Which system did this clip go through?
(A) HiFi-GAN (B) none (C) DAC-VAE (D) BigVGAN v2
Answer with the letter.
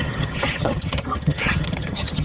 A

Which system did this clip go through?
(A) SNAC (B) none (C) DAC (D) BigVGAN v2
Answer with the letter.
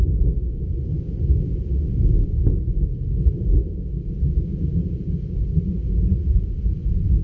B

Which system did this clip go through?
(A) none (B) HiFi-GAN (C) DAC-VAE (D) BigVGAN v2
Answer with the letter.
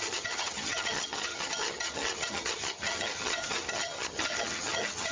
B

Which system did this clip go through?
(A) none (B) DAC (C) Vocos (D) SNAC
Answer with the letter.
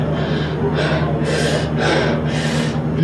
A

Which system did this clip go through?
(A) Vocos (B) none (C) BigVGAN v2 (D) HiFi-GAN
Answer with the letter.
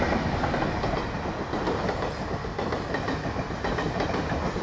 B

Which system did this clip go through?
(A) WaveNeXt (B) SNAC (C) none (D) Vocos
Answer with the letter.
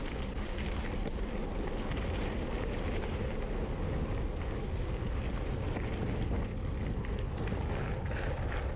C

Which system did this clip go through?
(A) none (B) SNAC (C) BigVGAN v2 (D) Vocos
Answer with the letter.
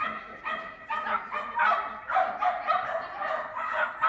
A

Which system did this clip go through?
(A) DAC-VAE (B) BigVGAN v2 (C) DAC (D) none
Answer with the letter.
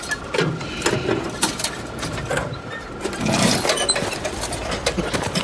D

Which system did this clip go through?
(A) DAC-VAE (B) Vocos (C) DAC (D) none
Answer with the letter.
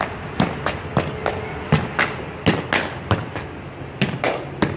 D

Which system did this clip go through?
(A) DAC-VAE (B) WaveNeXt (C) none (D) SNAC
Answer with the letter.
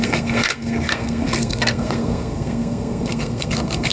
D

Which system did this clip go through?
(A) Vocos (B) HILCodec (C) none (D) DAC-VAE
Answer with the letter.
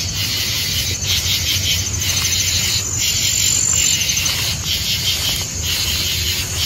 C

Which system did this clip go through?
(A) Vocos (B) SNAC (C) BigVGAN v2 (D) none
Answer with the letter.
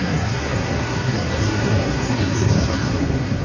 B